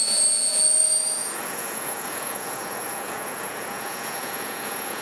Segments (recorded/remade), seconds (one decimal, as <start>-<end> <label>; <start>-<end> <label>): 0.0-5.0 remade